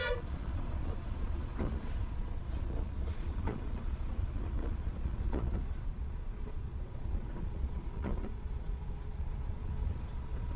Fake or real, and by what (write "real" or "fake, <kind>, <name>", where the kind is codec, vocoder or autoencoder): fake, vocoder, Vocos